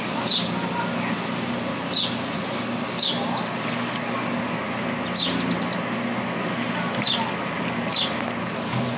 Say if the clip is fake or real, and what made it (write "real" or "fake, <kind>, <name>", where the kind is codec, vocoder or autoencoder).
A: real